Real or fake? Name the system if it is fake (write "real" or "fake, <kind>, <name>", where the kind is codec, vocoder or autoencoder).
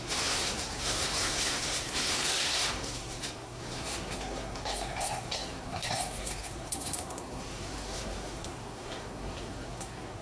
fake, codec, SNAC